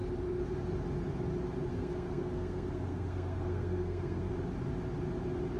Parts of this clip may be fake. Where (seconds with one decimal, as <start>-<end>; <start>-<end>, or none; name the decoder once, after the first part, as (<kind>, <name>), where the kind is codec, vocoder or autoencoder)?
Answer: 1.7-4.3 (codec, SNAC)